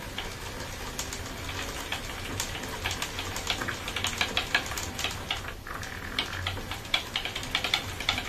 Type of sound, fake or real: real